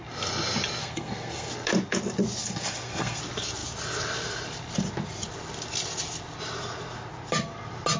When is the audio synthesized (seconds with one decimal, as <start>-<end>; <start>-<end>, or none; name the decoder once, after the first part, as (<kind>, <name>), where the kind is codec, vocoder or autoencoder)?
0.8-1.5 (codec, SNAC); 2.4-3.2